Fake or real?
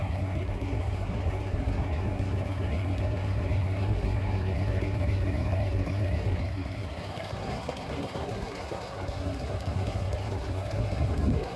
fake